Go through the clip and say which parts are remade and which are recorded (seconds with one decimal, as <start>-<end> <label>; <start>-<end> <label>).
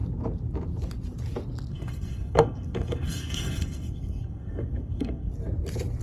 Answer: 0.0-1.7 recorded; 1.7-5.3 remade; 5.3-6.0 recorded